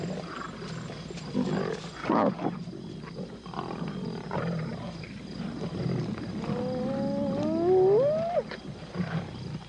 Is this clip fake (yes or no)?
no